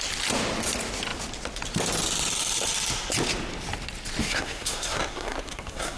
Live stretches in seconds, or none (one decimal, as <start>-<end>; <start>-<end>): 0.0-4.2